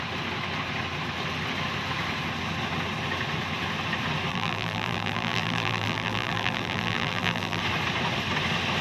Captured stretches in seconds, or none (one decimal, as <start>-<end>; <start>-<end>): 0.0-4.3; 7.6-8.8